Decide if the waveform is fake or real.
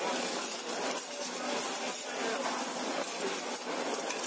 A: real